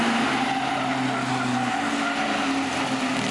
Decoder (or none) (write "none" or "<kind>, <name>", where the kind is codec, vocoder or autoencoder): none